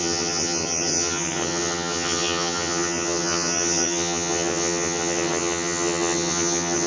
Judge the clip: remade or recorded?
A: remade